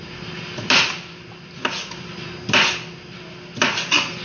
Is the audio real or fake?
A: real